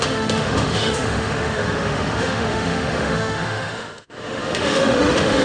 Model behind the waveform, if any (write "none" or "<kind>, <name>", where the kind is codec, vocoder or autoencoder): autoencoder, DAC-VAE